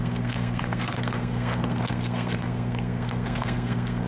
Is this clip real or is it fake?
fake